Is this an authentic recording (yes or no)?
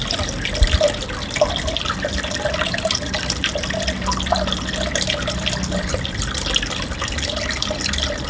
yes